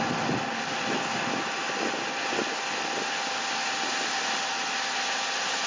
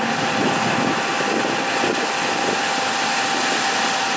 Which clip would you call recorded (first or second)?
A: first